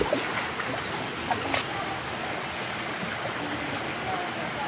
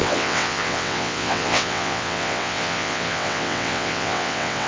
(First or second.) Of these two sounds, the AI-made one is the second